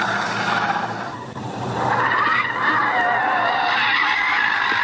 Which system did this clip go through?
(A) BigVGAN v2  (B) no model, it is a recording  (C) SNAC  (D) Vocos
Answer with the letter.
B